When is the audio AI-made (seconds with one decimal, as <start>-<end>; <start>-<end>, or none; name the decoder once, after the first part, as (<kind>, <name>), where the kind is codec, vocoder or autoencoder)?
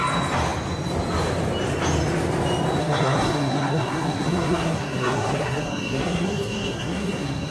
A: 2.8-7.5 (codec, SNAC)